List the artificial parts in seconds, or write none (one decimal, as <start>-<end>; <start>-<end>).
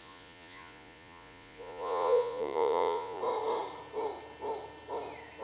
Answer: 0.0-3.2